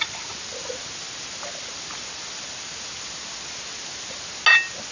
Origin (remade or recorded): recorded